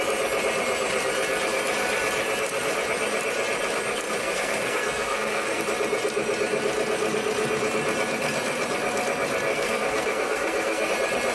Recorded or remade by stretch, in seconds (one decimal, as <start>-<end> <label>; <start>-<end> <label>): 0.0-4.2 recorded; 4.2-5.6 remade; 5.6-9.5 recorded; 9.5-10.9 remade; 10.9-11.3 recorded